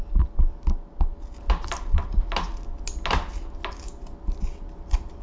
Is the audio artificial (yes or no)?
no